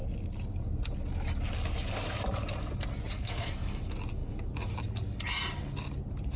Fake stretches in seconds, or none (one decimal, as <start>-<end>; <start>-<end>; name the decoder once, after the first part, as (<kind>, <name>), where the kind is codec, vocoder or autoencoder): 3.1-3.8 (codec, SNAC)